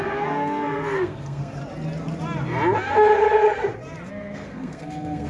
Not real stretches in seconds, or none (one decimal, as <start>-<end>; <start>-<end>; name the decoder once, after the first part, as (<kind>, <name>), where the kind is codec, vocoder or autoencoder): 0.0-1.6 (codec, SNAC); 4.1-5.3